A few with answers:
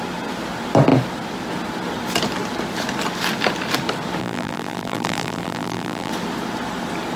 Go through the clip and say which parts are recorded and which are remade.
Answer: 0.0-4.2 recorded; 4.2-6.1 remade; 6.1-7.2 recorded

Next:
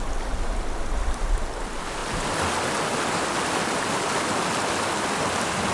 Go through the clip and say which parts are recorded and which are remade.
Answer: 0.0-5.7 recorded

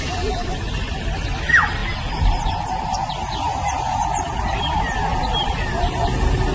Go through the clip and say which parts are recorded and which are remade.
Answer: 0.0-6.5 recorded

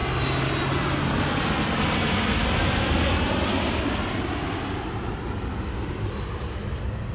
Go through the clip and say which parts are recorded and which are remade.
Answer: 0.0-7.1 recorded

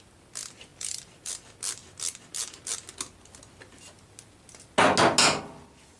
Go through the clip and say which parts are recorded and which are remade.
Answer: 0.0-0.7 recorded; 0.7-1.3 remade; 1.3-6.0 recorded

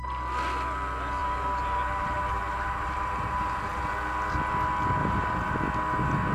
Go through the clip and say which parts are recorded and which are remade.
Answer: 0.0-1.2 recorded; 1.2-3.9 remade; 3.9-5.0 recorded; 5.0-5.6 remade; 5.6-6.3 recorded

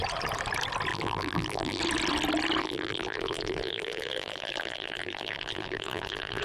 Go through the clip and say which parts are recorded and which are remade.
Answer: 0.0-0.9 recorded; 0.9-1.8 remade; 1.8-2.6 recorded; 2.6-6.4 remade

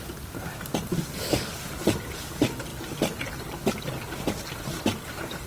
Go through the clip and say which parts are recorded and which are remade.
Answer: 0.0-0.9 remade; 0.9-1.5 recorded; 1.5-2.7 remade; 2.7-5.5 recorded